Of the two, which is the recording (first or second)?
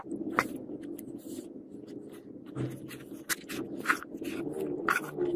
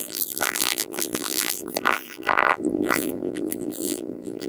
first